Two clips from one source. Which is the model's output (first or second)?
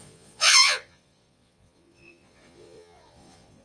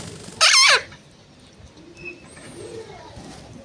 first